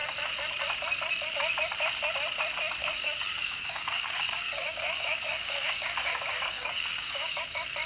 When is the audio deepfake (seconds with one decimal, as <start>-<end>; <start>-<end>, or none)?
2.8-7.4